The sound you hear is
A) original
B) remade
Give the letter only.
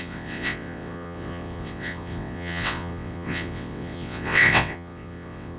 B